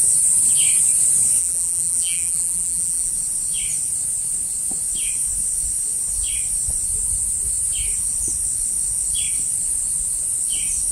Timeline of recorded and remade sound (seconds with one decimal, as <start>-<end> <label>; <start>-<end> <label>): 0.0-1.4 recorded; 1.4-3.1 remade; 3.1-10.9 recorded